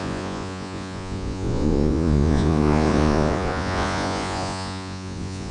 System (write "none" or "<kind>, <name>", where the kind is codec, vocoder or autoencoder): vocoder, Vocos